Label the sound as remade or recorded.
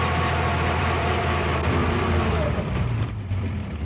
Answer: remade